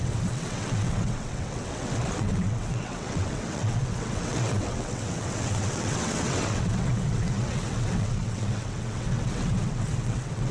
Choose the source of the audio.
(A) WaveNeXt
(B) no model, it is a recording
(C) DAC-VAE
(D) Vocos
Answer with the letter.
A